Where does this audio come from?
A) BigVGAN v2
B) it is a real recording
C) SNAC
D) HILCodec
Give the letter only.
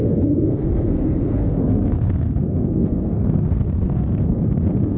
C